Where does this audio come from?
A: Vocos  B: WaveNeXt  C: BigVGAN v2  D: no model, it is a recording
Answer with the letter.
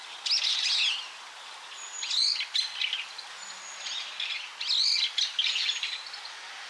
D